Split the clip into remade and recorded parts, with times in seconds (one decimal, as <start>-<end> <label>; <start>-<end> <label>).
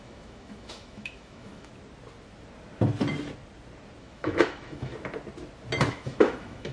0.0-1.7 remade; 1.7-4.0 recorded; 4.0-4.9 remade; 4.9-5.9 recorded; 5.9-6.7 remade